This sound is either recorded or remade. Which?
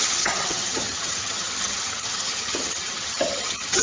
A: remade